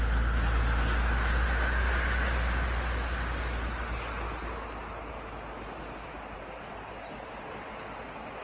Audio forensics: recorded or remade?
recorded